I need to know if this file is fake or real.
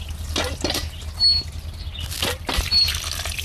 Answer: real